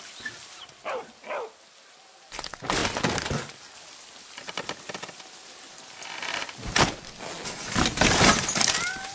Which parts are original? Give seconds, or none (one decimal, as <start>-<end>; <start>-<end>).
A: 0.0-9.1